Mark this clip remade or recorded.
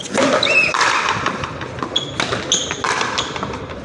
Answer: recorded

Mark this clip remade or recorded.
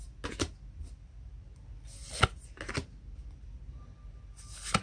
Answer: recorded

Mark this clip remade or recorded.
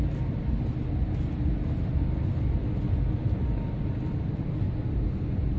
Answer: recorded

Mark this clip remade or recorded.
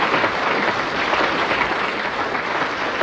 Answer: recorded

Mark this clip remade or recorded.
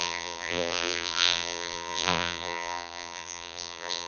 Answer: remade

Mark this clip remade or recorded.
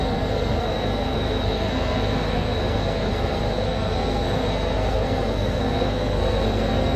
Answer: remade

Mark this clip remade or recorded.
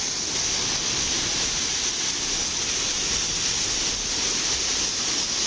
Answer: recorded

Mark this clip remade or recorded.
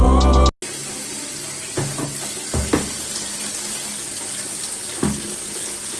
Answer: recorded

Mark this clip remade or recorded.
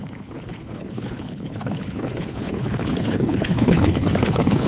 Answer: remade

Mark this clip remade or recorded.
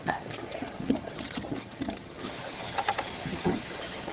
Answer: remade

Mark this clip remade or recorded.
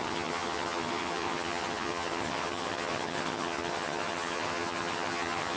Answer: remade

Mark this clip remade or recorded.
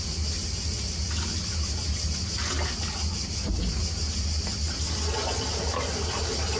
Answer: recorded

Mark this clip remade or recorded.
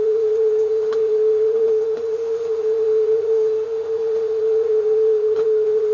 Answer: remade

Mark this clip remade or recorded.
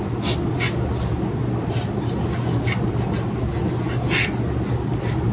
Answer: recorded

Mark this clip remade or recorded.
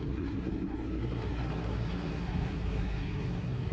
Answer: remade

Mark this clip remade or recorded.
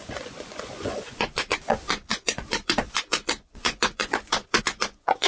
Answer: remade